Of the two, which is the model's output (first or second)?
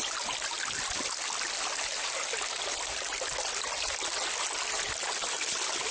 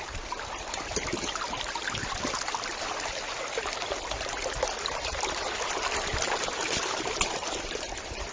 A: second